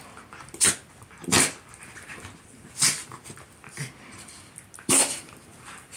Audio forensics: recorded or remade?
recorded